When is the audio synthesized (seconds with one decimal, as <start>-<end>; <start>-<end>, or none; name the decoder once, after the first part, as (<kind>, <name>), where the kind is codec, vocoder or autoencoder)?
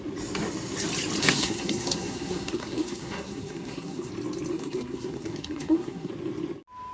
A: 1.2-4.1 (codec, SNAC); 4.5-6.1